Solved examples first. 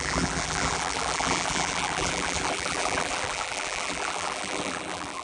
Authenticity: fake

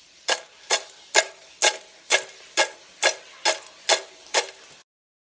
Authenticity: real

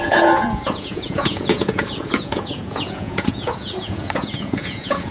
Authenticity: fake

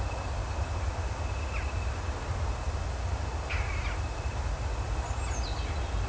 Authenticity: real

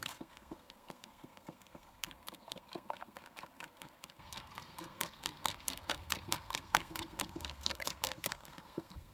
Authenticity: fake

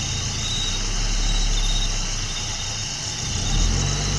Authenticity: real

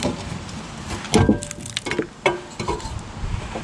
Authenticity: real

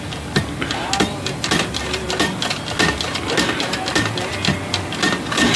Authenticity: real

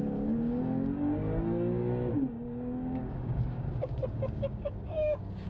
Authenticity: fake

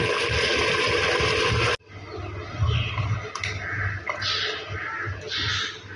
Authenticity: real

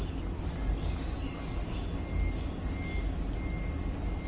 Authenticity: real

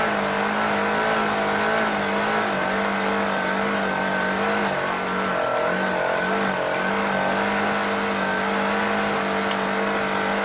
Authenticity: real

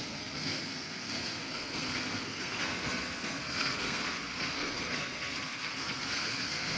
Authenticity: fake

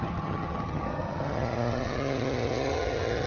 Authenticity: fake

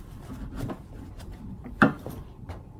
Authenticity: fake